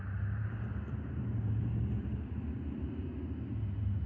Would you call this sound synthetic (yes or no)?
no